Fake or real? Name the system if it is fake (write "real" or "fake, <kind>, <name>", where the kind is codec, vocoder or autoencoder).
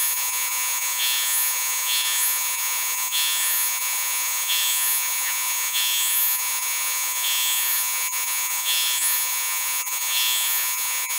fake, vocoder, Vocos